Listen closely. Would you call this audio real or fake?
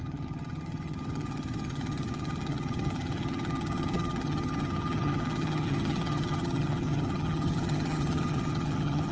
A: fake